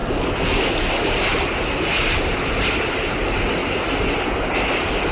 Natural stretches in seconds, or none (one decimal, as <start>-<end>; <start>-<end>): 0.0-5.1